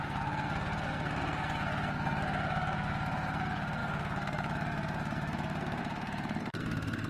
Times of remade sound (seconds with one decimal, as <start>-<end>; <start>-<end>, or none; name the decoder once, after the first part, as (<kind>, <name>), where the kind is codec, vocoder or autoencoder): 0.0-7.1 (codec, SNAC)